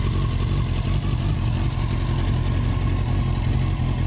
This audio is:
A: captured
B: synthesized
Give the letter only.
A